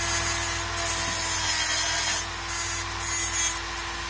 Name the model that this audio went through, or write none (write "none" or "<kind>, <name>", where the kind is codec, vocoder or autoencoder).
none